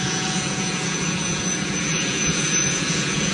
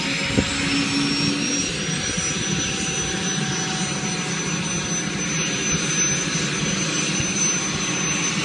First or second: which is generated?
first